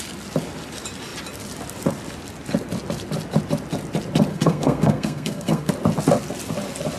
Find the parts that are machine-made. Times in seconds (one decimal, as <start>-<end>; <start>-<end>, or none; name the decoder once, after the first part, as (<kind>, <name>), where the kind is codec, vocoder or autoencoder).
4.3-5.7 (codec, SNAC)